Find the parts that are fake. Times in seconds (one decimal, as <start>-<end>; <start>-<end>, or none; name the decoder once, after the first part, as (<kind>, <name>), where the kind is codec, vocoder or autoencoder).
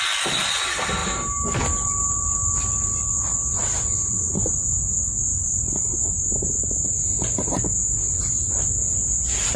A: 3.4-4.7 (vocoder, BigVGAN v2); 5.3-5.9